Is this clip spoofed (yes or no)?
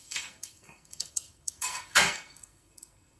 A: yes